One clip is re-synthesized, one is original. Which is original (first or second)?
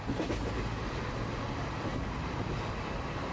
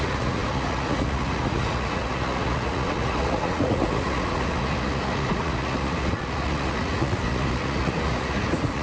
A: first